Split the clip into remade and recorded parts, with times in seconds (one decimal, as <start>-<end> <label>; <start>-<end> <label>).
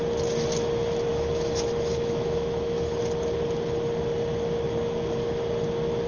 0.0-1.1 recorded; 1.1-3.0 remade; 3.0-6.1 recorded